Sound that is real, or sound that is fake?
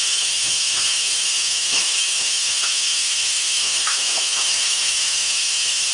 fake